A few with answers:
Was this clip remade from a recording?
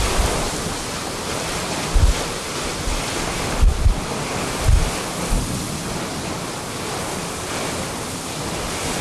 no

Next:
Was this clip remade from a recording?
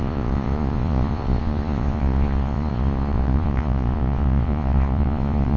yes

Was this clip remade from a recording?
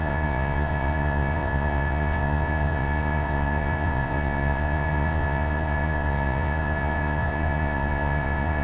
yes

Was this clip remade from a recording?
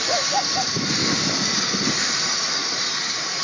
no